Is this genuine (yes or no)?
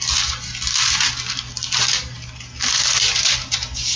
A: yes